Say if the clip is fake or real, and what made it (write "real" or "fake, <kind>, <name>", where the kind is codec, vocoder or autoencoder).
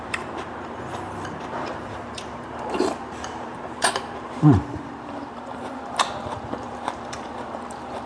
fake, vocoder, BigVGAN v2